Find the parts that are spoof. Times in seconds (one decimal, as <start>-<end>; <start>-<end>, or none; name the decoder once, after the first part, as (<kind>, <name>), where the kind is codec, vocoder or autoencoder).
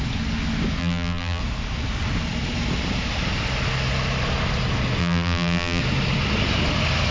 0.8-1.4 (vocoder, BigVGAN v2); 5.0-5.8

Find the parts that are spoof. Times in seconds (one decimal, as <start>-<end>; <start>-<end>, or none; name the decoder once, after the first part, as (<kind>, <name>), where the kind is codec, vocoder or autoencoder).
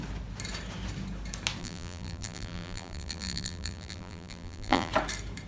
1.6-4.9 (vocoder, BigVGAN v2)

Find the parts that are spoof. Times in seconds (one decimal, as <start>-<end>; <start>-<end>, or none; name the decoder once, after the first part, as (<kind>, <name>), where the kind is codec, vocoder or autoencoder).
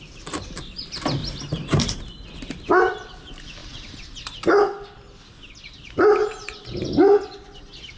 1.2-2.0 (vocoder, BigVGAN v2); 6.2-7.0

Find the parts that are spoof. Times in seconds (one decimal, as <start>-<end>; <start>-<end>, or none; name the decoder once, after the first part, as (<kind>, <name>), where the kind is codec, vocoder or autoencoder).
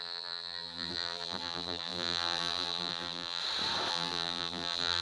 0.0-3.4 (vocoder, BigVGAN v2); 3.9-5.0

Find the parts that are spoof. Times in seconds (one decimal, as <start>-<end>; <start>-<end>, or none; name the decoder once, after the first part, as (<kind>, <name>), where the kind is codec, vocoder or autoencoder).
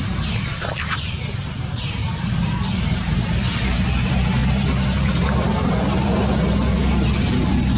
2.0-3.2 (vocoder, BigVGAN v2)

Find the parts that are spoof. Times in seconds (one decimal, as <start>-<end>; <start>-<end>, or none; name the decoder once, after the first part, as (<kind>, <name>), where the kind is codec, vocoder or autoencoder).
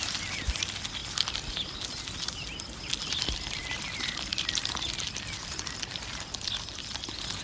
none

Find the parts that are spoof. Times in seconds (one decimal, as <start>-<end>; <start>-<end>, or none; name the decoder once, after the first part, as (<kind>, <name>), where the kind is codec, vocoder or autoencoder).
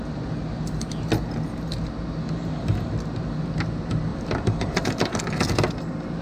4.1-5.2 (vocoder, BigVGAN v2)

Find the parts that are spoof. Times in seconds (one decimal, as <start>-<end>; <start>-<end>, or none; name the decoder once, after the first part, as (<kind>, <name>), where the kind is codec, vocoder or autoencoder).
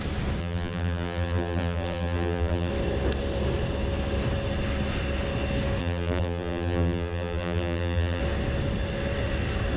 0.4-2.7 (vocoder, BigVGAN v2); 5.8-8.2